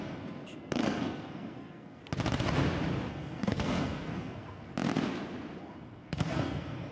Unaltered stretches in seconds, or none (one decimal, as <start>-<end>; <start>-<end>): 2.0-3.1; 4.7-5.6